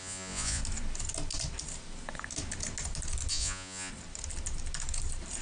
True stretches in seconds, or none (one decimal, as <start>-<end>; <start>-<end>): 0.6-3.3; 3.9-5.4